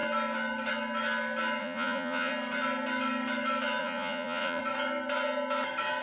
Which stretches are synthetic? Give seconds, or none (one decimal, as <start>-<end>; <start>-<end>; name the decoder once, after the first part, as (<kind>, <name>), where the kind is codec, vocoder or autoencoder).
1.6-2.3 (vocoder, Vocos); 3.8-4.6